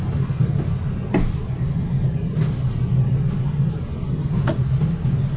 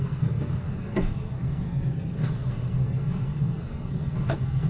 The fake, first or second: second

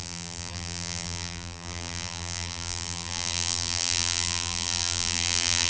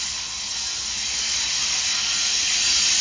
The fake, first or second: first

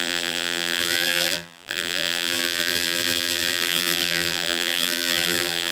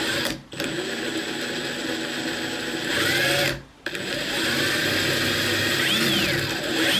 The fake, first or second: first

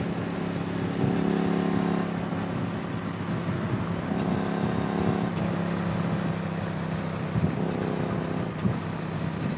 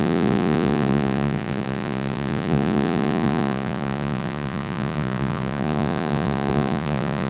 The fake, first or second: second